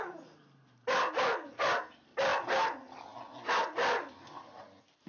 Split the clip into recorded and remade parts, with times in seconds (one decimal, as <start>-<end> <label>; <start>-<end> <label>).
0.0-5.1 recorded